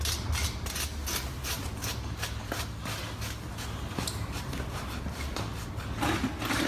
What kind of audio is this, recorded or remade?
recorded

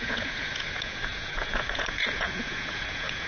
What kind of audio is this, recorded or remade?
remade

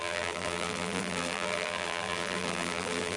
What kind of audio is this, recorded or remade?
remade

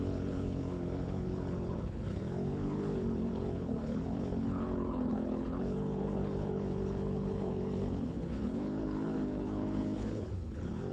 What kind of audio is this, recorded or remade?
remade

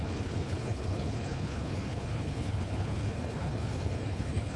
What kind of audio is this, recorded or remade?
remade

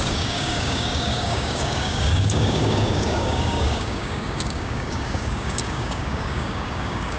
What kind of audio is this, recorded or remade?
remade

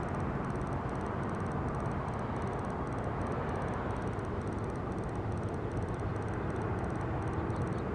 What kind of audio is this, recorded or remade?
recorded